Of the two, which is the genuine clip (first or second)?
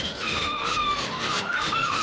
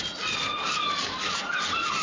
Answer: second